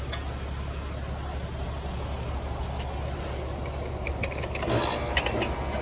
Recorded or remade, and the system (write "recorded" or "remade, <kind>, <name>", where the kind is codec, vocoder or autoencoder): recorded